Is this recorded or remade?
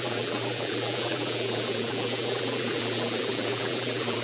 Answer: remade